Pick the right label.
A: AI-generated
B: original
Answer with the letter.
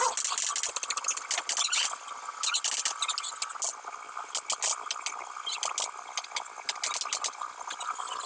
B